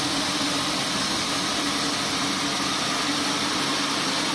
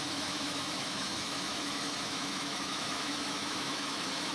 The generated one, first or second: second